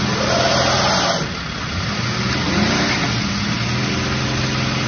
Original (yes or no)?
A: yes